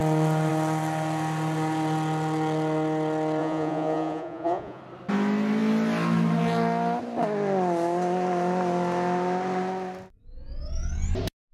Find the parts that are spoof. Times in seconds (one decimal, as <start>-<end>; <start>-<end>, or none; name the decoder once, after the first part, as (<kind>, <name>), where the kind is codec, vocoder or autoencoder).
3.4-4.8 (vocoder, Vocos)